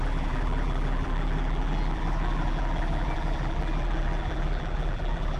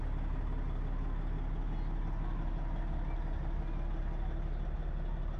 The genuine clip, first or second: second